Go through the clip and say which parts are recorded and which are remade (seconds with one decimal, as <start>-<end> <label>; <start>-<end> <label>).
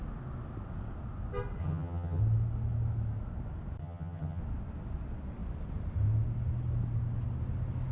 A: 0.0-1.6 recorded; 1.6-2.2 remade; 2.2-3.8 recorded; 3.8-4.4 remade; 4.4-7.9 recorded